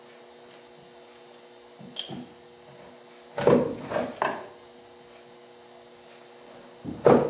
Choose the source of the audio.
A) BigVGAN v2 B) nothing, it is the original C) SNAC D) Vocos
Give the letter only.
B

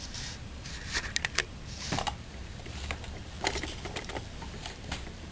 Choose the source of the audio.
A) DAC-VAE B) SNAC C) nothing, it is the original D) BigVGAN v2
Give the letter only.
D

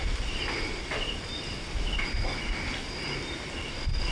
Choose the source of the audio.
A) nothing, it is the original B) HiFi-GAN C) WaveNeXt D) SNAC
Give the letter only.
A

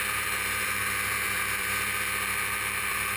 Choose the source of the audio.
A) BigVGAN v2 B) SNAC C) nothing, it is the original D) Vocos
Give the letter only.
A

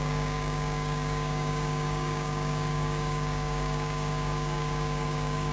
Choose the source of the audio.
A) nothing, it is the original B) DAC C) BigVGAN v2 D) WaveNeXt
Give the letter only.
B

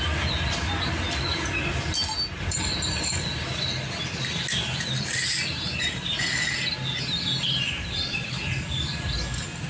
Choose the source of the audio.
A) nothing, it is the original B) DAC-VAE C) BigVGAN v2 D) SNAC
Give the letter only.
A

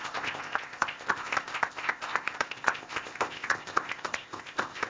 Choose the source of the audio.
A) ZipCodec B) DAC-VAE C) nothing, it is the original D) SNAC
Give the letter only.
A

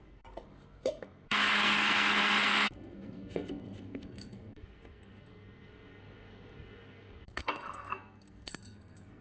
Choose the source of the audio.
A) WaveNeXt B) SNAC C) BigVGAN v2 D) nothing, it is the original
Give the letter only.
B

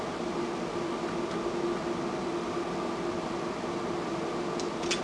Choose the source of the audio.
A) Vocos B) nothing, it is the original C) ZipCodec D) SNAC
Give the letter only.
B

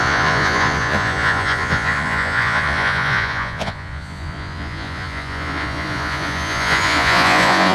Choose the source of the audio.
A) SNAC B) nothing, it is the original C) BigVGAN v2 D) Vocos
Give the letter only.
D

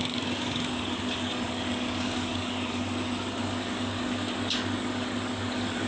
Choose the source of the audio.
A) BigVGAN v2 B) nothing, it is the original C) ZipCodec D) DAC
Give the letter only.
D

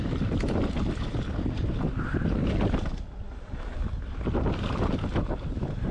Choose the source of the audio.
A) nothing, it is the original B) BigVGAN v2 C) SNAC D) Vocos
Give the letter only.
A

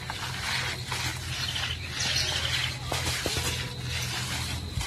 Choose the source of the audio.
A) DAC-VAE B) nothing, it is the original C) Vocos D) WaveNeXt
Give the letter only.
B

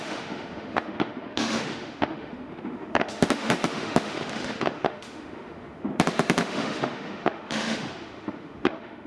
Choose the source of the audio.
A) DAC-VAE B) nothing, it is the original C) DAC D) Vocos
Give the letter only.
A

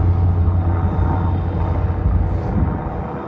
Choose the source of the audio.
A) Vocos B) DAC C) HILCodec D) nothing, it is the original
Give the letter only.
D